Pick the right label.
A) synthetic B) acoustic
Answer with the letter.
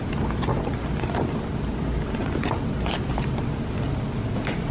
B